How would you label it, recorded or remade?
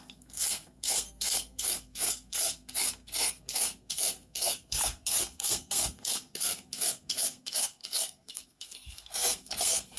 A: remade